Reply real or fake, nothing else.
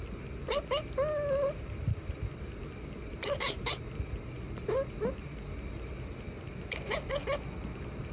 real